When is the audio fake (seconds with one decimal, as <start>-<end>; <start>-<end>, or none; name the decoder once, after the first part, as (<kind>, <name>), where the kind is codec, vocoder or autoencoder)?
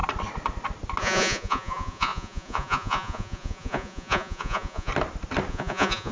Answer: 1.0-4.9 (vocoder, Vocos); 5.5-6.1